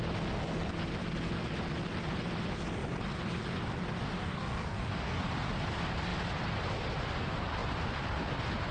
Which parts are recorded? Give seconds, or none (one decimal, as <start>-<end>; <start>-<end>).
0.0-4.2; 5.2-8.7